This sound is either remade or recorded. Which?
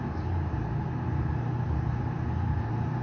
recorded